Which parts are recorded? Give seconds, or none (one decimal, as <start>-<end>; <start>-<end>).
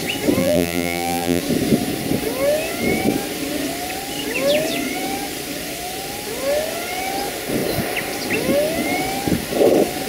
0.0-0.4; 1.4-10.1